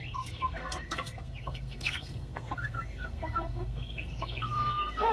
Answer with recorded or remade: remade